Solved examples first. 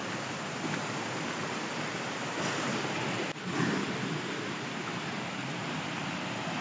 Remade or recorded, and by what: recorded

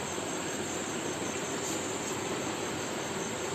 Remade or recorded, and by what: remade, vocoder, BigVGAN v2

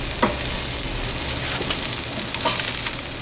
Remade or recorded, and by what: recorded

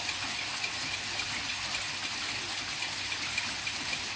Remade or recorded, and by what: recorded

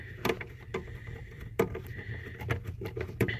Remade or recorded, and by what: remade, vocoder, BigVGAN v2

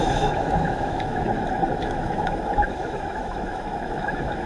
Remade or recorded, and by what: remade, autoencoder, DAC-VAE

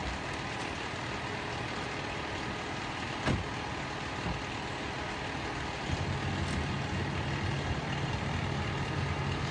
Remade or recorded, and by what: recorded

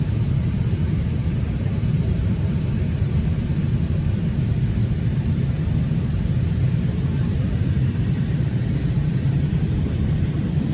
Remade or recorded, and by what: remade, vocoder, BigVGAN v2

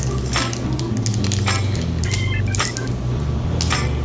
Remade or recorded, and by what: recorded